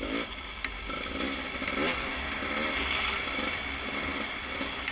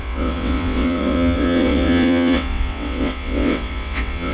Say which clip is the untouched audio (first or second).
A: first